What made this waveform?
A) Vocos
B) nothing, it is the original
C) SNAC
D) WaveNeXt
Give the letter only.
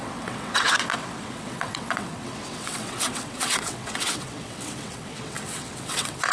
D